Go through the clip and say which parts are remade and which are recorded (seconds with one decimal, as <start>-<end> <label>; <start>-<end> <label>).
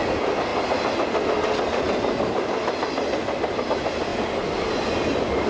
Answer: 0.0-5.5 recorded